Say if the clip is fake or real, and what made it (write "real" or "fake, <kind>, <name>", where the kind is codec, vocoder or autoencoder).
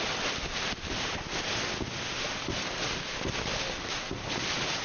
real